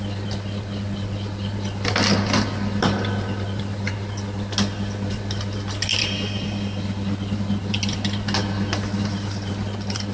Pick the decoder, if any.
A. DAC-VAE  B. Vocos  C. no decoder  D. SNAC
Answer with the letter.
C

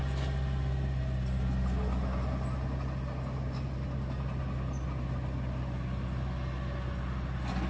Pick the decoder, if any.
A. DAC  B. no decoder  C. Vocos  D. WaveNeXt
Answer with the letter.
B